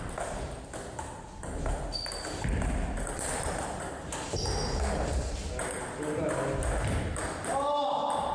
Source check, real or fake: real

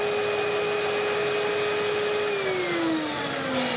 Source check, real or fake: real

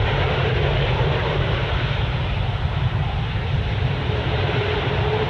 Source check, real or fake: fake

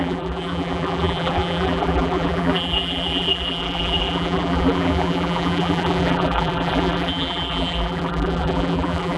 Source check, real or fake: fake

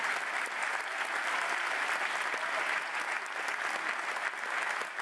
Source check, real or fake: real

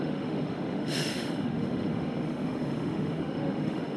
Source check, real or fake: fake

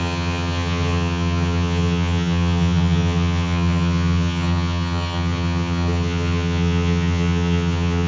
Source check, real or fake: fake